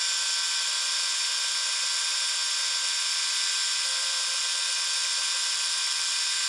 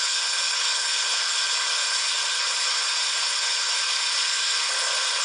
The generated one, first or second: second